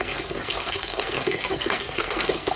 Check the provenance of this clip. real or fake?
fake